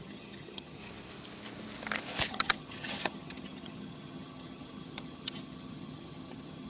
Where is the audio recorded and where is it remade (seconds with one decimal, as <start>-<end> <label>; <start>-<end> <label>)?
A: 0.0-0.8 remade; 0.8-2.3 recorded; 2.3-6.7 remade